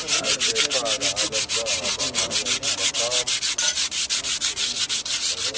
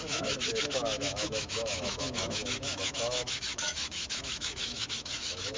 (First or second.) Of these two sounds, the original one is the first